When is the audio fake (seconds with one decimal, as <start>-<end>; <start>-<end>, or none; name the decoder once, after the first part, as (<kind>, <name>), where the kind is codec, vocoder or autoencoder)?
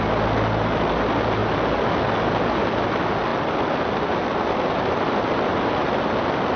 none